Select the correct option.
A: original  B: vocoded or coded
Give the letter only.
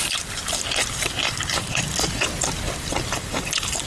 B